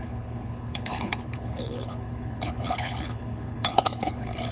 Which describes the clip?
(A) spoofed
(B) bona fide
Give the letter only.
A